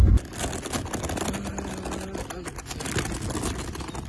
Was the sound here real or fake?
real